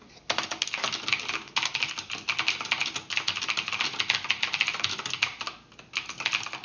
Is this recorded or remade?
recorded